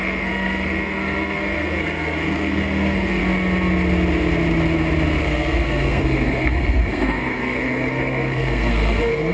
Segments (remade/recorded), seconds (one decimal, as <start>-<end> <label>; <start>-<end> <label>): 0.0-3.2 remade; 3.2-5.2 recorded; 5.2-9.3 remade